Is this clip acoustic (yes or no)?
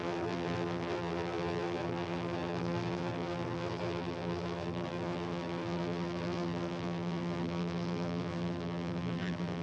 no